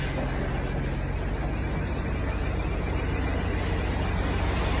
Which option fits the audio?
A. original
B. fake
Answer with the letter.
A